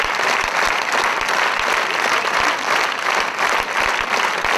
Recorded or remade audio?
recorded